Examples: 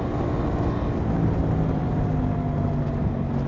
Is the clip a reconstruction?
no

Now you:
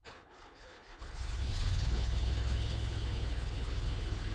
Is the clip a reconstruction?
yes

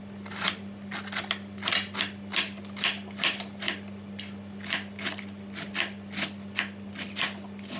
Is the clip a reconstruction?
no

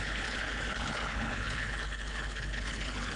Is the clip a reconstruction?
yes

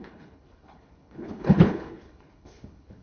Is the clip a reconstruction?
yes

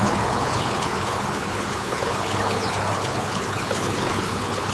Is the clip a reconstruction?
yes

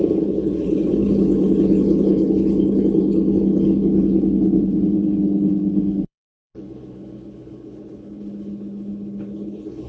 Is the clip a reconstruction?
yes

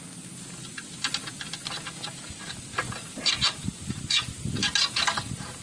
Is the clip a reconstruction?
no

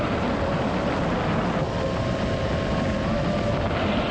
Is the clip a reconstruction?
no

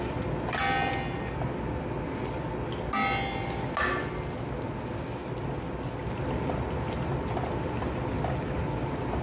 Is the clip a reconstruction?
no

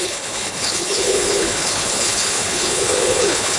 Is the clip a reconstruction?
yes